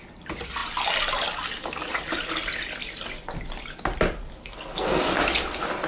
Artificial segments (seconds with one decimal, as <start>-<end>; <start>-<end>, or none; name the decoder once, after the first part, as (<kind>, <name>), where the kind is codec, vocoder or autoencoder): 4.4-5.2 (codec, SNAC)